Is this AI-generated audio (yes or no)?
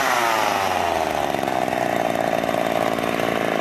no